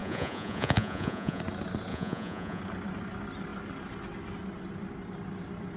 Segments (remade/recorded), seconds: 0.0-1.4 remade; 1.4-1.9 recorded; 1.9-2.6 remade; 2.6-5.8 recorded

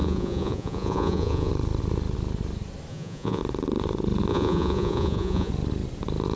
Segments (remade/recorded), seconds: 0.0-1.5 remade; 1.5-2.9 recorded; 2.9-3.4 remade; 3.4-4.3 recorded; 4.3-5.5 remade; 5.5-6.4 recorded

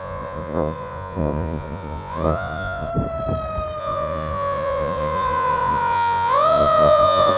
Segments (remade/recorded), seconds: 0.0-2.9 remade; 2.9-3.8 recorded; 3.8-7.4 remade

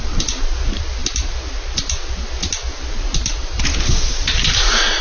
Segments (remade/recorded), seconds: 0.0-5.0 recorded

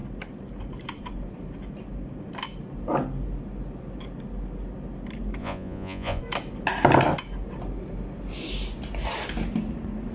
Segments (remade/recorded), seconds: 0.0-5.4 recorded; 5.4-6.2 remade; 6.2-10.1 recorded

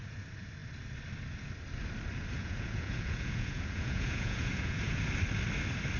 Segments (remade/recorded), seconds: 0.0-2.4 recorded; 2.4-5.0 remade; 5.0-6.0 recorded

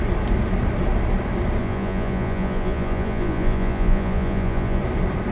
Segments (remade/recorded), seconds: 0.0-1.6 recorded; 1.6-4.8 remade; 4.8-5.3 recorded